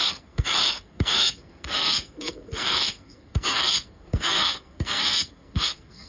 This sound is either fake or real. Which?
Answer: fake